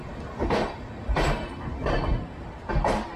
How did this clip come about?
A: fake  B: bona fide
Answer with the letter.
B